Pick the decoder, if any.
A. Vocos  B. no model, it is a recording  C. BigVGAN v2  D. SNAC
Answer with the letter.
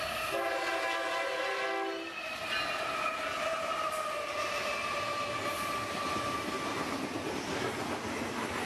B